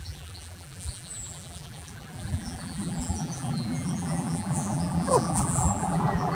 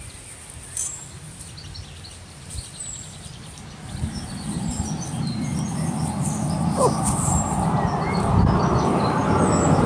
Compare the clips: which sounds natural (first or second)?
second